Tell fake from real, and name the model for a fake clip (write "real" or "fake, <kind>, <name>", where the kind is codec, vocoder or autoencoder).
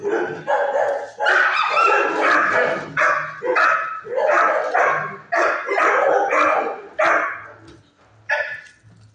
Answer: real